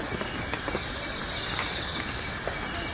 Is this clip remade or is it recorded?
recorded